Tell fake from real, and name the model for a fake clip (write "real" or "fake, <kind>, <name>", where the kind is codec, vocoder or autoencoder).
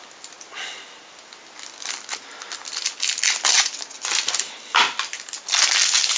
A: real